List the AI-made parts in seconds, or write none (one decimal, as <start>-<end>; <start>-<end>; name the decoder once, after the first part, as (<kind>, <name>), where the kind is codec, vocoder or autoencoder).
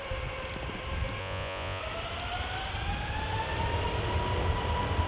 1.2-1.8 (vocoder, Vocos)